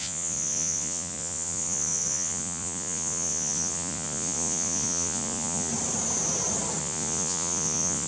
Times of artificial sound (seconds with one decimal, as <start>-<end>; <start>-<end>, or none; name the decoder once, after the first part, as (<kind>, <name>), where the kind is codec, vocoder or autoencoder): 0.0-5.7 (vocoder, Vocos); 6.8-8.1